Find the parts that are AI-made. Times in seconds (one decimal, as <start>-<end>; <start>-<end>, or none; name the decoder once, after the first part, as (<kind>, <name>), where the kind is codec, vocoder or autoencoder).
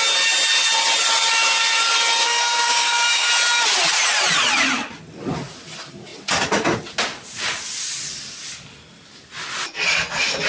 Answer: 2.2-3.3 (codec, DAC)